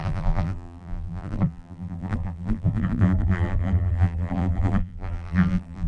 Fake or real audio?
fake